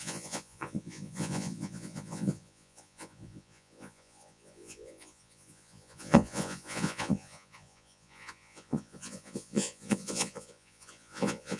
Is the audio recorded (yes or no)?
no